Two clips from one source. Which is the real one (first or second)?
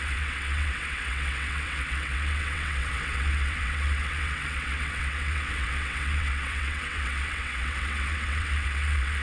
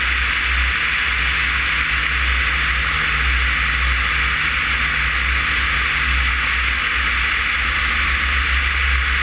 second